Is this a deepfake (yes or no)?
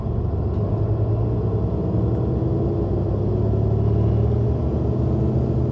no